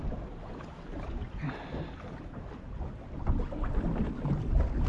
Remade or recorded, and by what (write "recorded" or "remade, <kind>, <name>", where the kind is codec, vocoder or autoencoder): recorded